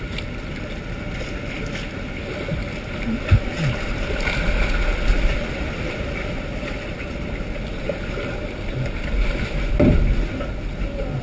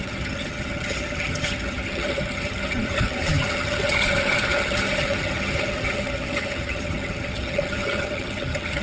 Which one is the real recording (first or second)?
first